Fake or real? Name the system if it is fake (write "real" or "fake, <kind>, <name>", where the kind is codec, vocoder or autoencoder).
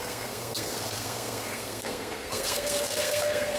fake, codec, SNAC